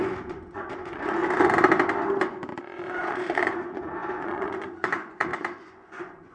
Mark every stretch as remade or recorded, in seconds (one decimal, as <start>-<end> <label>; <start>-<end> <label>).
0.0-1.2 remade; 1.2-2.2 recorded; 2.2-6.3 remade